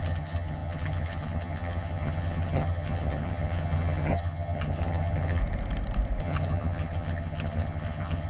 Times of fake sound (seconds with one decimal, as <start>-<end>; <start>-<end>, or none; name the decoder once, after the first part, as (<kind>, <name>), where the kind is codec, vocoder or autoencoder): 0.0-5.4 (vocoder, HiFi-GAN); 6.2-8.3